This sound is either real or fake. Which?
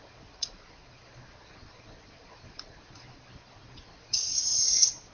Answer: fake